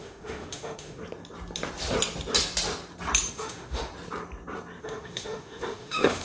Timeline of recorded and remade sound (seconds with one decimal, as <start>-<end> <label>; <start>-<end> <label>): 0.0-1.0 remade; 1.0-3.3 recorded; 3.3-3.9 remade; 3.9-4.8 recorded; 4.8-6.2 remade